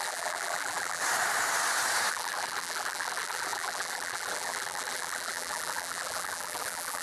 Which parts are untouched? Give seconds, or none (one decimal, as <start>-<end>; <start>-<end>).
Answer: 1.0-2.1

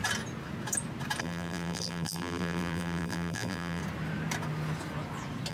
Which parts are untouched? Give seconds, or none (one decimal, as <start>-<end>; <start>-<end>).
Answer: 0.0-1.2; 3.8-5.5